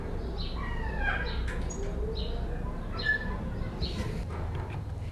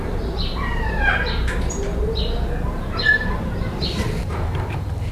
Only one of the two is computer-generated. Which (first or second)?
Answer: second